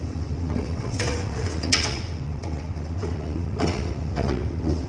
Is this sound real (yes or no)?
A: no